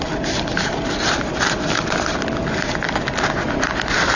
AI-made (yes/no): no